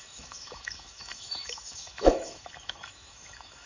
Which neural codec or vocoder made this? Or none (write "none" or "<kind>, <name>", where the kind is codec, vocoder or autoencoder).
autoencoder, DAC-VAE